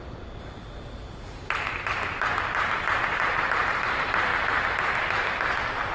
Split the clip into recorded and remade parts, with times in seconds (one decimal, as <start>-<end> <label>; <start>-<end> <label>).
0.0-4.3 remade; 4.3-5.9 recorded